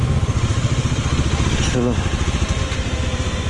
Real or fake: real